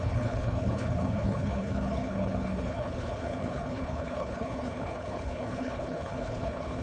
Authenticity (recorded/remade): remade